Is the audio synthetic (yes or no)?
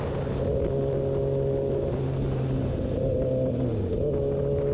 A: no